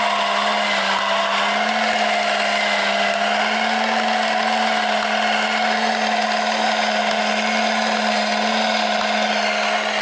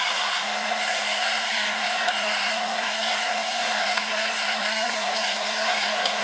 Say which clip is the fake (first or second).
second